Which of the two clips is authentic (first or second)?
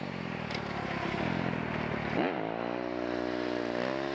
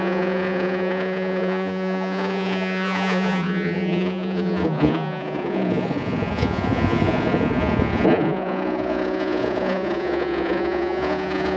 first